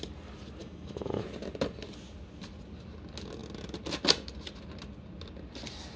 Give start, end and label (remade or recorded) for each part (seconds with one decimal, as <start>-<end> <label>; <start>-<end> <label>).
0.0-0.6 recorded; 0.6-1.2 remade; 1.2-6.0 recorded

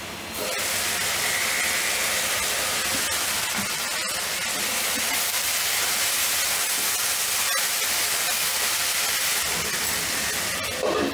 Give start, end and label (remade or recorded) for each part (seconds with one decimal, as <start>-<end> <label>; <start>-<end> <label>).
0.0-11.1 recorded

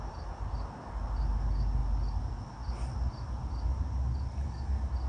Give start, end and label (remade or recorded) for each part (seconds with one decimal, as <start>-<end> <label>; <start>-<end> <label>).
0.0-5.1 recorded

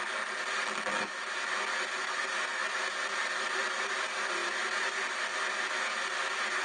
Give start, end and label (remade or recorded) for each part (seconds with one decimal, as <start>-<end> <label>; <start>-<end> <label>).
0.0-6.6 recorded

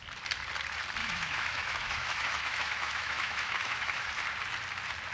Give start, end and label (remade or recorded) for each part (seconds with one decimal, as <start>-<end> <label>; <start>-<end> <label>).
0.0-1.0 recorded; 1.0-4.1 remade; 4.1-5.1 recorded

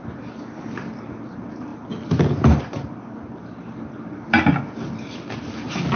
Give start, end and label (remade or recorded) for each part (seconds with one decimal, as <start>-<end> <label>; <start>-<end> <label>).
0.0-6.0 recorded